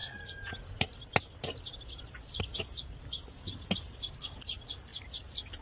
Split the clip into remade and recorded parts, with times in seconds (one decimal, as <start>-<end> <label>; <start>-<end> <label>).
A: 0.0-5.6 recorded